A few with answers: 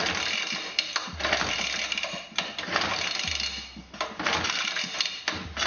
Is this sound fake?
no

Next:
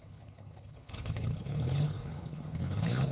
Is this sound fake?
yes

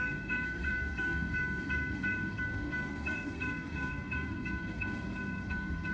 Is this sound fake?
yes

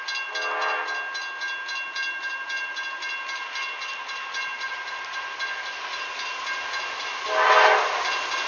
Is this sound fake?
no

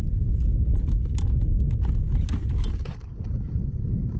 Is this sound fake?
no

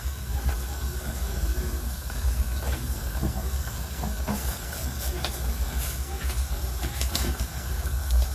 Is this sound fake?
yes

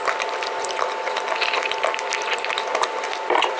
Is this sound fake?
no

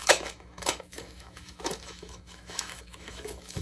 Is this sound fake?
yes